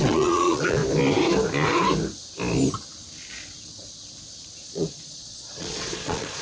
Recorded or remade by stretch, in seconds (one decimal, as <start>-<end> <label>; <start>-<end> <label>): 0.0-0.8 remade; 0.8-4.6 recorded; 4.6-6.4 remade

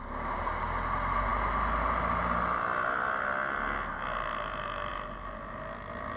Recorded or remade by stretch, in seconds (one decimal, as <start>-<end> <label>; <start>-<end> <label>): 0.0-6.2 recorded

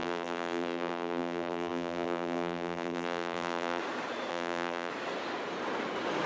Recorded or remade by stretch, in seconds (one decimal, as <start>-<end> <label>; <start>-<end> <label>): 0.0-3.8 remade; 3.8-4.3 recorded; 4.3-4.9 remade; 4.9-6.3 recorded

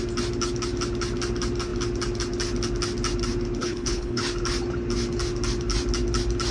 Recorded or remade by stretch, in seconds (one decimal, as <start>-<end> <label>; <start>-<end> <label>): 0.0-3.6 recorded; 3.6-4.2 remade; 4.2-6.5 recorded

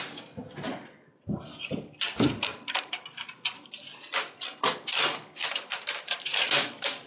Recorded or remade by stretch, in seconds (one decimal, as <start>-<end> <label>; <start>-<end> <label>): 0.0-3.9 remade; 3.9-5.5 recorded; 5.5-7.1 remade

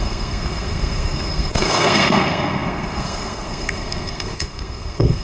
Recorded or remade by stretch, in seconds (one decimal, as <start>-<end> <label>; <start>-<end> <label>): 0.0-5.2 remade